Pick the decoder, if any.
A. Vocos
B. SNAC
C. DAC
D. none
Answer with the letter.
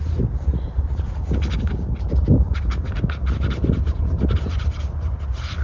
D